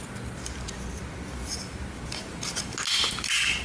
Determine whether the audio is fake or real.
real